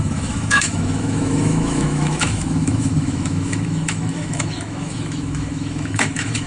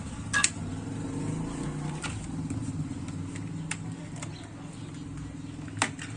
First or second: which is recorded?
second